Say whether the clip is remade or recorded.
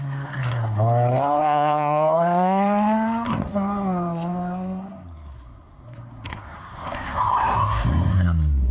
remade